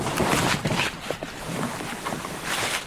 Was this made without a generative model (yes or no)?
no